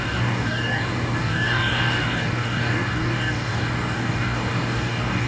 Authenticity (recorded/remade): remade